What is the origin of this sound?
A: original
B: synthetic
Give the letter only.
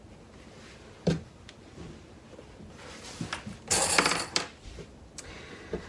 A